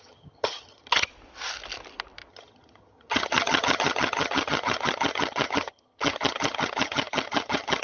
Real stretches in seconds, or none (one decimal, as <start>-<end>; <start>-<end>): 1.1-2.3